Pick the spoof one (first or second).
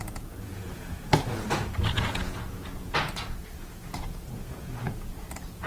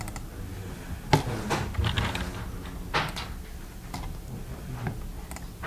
first